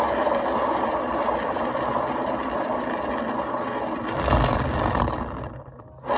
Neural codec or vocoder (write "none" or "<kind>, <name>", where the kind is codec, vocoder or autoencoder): none